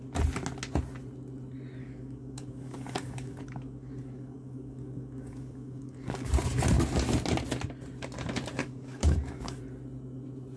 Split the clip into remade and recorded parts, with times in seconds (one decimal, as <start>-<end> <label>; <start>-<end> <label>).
0.0-1.8 recorded; 1.8-6.3 remade; 6.3-8.6 recorded; 8.6-9.6 remade; 9.6-10.6 recorded